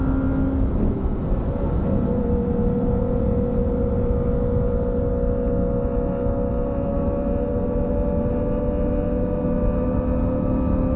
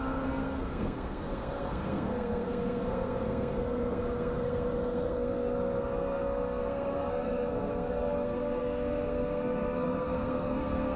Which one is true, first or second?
first